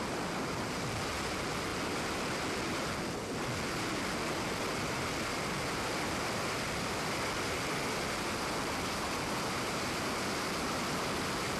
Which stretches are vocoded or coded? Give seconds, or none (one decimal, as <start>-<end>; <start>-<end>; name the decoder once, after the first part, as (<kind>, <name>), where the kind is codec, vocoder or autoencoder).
none